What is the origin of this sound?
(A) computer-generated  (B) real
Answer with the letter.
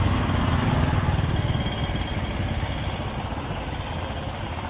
B